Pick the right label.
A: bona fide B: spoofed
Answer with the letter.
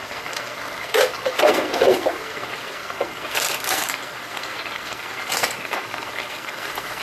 B